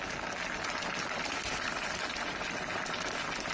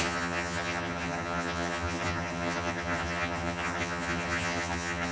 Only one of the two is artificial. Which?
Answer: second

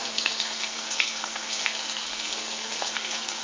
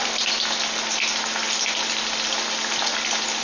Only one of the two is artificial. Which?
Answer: first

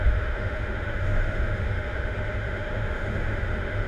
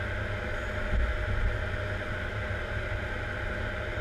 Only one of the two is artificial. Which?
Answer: first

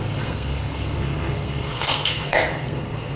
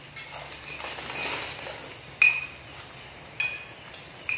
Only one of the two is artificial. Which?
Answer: first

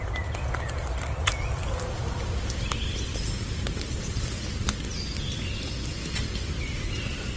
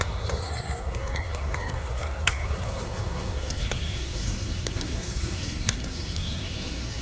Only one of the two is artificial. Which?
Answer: second